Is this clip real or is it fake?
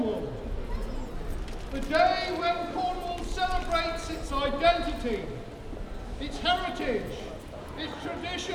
real